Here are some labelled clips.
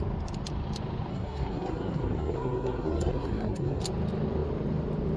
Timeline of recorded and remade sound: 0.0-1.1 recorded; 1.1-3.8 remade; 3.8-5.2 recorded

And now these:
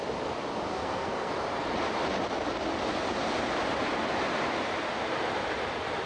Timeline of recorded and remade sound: 0.0-0.7 recorded; 0.7-1.3 remade; 1.3-6.1 recorded

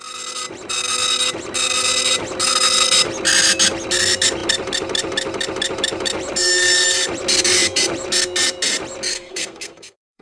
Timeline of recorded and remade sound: 0.0-9.1 recorded; 9.1-10.2 remade